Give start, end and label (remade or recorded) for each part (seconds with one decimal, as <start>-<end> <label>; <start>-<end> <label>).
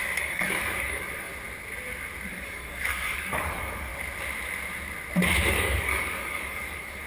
0.0-1.3 remade; 1.3-2.3 recorded; 2.3-3.9 remade; 3.9-5.5 recorded; 5.5-7.1 remade